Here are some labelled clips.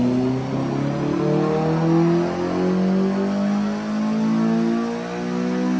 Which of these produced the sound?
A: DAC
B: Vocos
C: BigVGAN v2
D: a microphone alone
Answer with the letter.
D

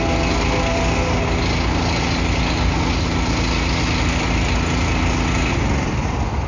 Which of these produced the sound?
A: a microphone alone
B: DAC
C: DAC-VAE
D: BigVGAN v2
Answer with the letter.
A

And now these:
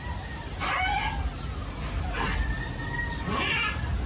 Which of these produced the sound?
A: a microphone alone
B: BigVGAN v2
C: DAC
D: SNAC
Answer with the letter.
A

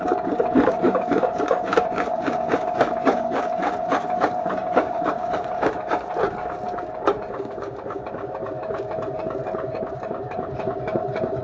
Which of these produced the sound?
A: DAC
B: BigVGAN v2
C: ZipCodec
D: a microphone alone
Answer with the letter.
A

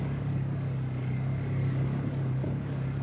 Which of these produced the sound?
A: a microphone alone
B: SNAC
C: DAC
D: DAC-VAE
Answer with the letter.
C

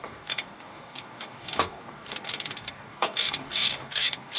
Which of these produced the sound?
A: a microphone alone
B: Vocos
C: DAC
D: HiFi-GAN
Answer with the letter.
C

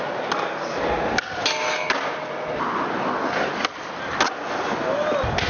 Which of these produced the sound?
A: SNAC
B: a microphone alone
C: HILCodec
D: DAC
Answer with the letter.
B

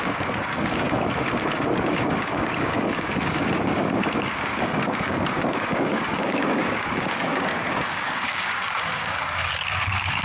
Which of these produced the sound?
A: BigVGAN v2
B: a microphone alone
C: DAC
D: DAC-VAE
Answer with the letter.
C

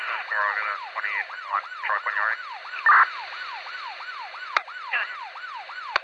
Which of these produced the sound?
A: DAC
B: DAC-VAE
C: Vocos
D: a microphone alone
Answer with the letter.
D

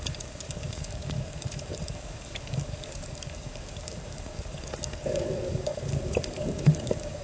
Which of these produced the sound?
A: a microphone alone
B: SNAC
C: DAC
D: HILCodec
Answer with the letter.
C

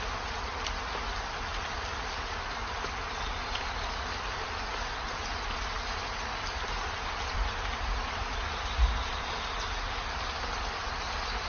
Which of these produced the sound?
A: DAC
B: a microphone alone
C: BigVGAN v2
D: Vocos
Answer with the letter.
B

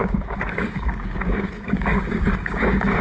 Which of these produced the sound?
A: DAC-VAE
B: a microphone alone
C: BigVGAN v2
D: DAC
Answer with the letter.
D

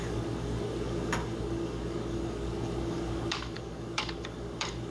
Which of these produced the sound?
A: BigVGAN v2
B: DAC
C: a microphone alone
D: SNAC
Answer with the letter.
B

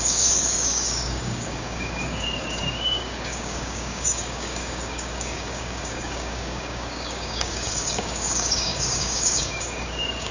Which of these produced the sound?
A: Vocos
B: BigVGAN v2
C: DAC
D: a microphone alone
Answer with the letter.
C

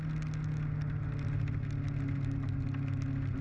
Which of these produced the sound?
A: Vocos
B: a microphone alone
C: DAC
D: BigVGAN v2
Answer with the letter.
B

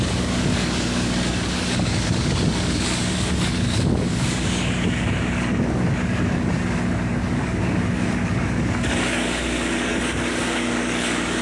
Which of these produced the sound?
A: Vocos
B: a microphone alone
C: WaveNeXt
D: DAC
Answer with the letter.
D